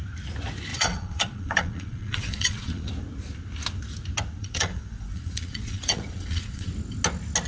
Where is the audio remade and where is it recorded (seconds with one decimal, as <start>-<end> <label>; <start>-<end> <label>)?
0.0-0.7 recorded; 0.7-2.9 remade; 2.9-4.4 recorded; 4.4-6.7 remade; 6.7-7.5 recorded

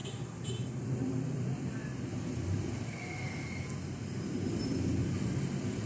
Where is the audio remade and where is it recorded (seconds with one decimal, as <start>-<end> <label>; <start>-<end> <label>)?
0.0-1.8 remade; 1.8-5.0 recorded; 5.0-5.9 remade

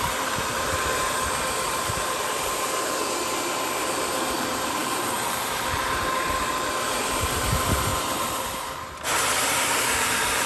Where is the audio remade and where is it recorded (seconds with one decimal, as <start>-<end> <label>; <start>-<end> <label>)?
0.0-7.9 remade; 7.9-8.4 recorded; 8.4-10.5 remade